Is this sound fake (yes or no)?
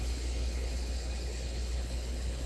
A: yes